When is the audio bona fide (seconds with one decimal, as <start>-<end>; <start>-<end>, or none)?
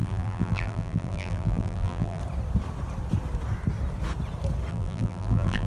2.2-4.7